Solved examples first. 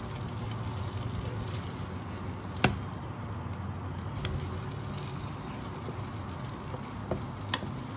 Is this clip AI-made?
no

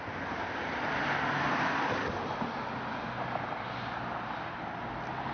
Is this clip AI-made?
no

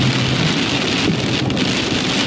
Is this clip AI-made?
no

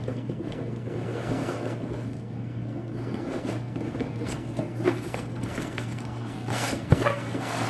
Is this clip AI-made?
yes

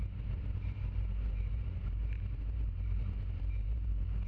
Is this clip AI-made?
yes